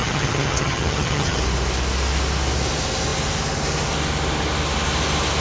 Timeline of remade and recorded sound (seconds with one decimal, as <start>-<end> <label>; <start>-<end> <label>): 0.0-1.4 remade; 1.4-5.4 recorded